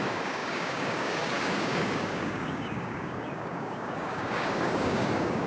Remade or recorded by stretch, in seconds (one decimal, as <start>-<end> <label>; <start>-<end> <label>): 0.0-5.5 remade